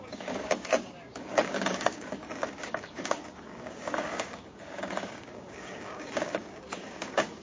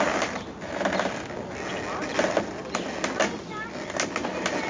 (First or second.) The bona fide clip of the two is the second